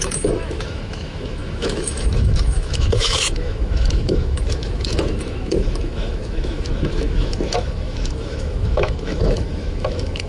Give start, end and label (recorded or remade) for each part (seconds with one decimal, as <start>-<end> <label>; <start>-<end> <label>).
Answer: 0.0-10.3 remade